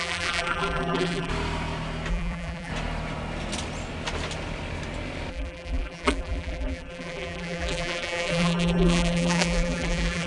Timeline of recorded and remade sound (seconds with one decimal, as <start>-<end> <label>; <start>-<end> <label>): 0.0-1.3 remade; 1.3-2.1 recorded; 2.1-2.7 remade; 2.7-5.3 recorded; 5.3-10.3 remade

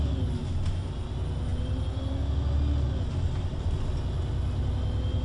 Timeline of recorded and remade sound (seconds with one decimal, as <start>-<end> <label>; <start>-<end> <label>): 0.0-5.2 recorded

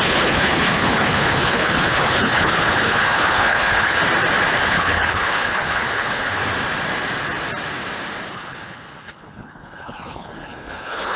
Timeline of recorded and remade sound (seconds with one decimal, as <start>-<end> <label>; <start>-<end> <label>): 0.0-4.0 remade; 4.0-4.7 recorded; 4.7-6.4 remade; 6.4-8.3 recorded; 8.3-11.2 remade

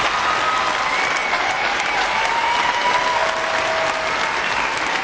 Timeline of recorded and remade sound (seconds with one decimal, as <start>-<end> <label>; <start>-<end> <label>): 0.0-1.2 recorded; 1.2-2.8 remade; 2.8-5.0 recorded